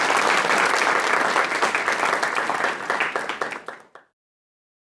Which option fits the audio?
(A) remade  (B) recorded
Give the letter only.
B